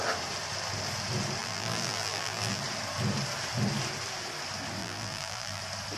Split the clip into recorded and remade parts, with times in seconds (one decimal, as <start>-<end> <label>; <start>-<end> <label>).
0.0-1.4 recorded; 1.4-2.6 remade; 2.6-4.8 recorded; 4.8-5.6 remade; 5.6-6.0 recorded